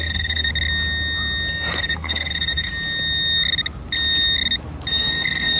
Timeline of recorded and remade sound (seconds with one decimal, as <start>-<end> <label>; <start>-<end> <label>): 0.0-0.5 remade; 0.5-1.5 recorded; 1.5-2.7 remade; 2.7-4.9 recorded; 4.9-5.6 remade